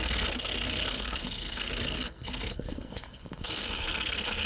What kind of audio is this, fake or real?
fake